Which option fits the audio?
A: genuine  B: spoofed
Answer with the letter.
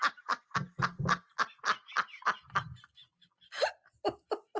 A